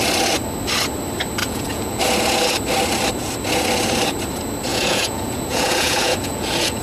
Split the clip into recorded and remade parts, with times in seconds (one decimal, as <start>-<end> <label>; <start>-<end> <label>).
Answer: 0.0-1.4 recorded; 1.4-2.0 remade; 2.0-4.7 recorded; 4.7-6.8 remade